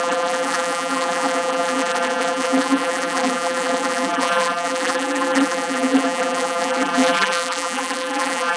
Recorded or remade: remade